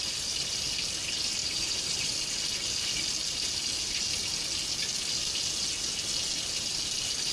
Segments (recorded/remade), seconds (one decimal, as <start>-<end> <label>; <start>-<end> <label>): 0.0-1.4 recorded; 1.4-2.1 remade; 2.1-7.3 recorded